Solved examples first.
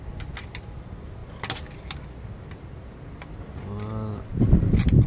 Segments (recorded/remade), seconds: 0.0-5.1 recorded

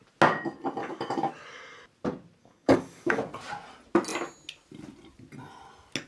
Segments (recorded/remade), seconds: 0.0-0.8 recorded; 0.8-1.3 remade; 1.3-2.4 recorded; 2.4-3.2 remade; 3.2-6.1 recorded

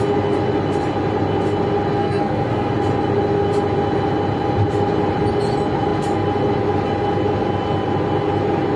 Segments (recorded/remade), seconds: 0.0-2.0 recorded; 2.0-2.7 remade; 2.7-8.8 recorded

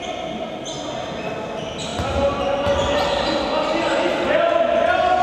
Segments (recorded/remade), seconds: 0.0-5.2 recorded

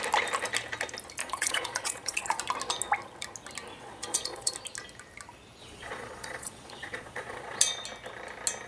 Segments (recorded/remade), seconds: 0.0-1.2 recorded; 1.2-2.4 remade; 2.4-3.7 recorded; 3.7-4.5 remade; 4.5-5.6 recorded; 5.6-7.6 remade; 7.6-8.7 recorded

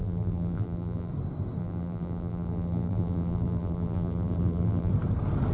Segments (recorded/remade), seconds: 0.0-1.1 remade; 1.1-1.6 recorded; 1.6-4.9 remade; 4.9-5.5 recorded

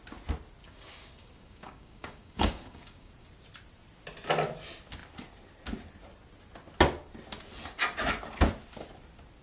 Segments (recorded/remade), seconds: 0.0-0.6 recorded; 0.6-3.1 remade; 3.1-9.4 recorded